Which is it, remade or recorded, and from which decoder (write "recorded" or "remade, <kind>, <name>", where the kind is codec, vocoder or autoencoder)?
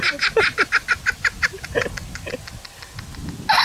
recorded